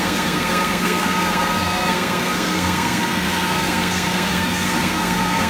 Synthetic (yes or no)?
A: yes